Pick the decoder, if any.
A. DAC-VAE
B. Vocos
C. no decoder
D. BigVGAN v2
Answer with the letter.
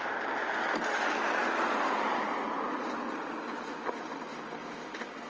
C